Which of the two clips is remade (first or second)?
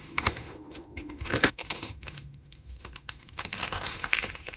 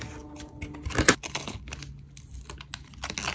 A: first